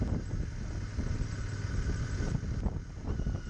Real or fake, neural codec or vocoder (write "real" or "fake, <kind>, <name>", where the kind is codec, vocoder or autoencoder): real